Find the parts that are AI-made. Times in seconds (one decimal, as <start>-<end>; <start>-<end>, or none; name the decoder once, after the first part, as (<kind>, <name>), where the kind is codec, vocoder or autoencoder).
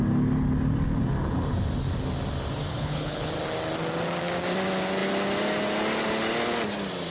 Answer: 2.7-3.3 (codec, HILCodec)